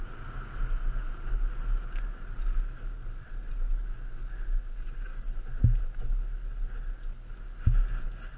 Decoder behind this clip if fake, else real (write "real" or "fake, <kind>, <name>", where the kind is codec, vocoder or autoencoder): real